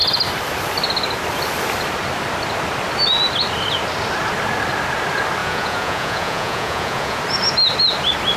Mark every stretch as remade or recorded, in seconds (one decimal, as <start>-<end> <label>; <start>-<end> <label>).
0.0-5.4 recorded; 5.4-7.2 remade; 7.2-8.4 recorded